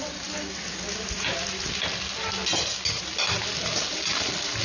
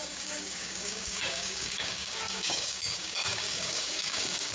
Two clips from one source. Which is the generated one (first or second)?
second